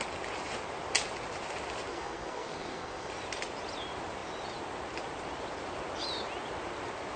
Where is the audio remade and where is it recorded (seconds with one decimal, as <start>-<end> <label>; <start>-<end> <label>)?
0.0-1.9 recorded; 1.9-3.1 remade; 3.1-7.2 recorded